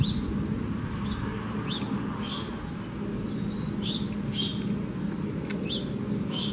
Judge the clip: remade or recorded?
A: recorded